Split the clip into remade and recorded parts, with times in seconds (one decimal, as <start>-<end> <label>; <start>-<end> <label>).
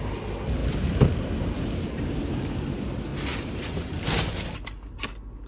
0.0-0.6 recorded; 0.6-2.2 remade; 2.2-3.1 recorded; 3.1-4.0 remade; 4.0-5.5 recorded